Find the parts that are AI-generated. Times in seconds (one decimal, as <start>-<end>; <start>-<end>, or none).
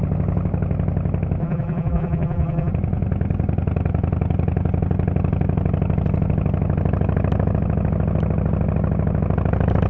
1.4-2.7